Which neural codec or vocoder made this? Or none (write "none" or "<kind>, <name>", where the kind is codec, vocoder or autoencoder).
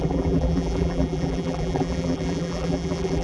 vocoder, BigVGAN v2